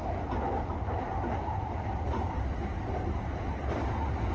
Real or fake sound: real